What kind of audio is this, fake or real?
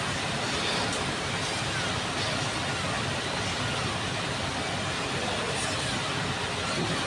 real